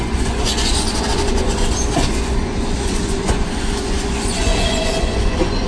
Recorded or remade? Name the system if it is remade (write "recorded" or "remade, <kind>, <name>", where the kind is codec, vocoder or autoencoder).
remade, vocoder, Vocos